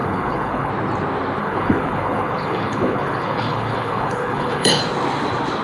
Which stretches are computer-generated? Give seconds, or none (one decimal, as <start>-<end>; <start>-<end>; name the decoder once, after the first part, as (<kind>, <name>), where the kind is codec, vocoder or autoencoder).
0.0-0.7 (codec, HILCodec); 1.4-4.8